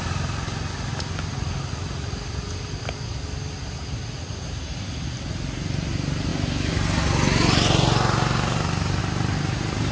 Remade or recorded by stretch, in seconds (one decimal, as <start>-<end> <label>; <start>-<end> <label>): 0.0-9.9 recorded